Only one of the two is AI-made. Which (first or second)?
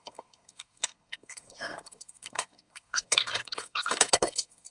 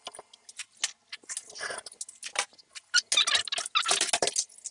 first